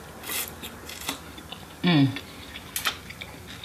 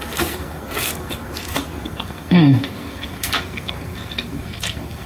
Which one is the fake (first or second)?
second